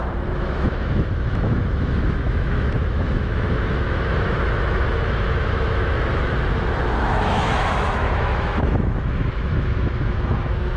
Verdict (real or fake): fake